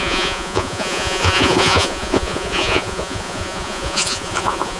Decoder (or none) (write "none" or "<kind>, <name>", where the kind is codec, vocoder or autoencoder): vocoder, Vocos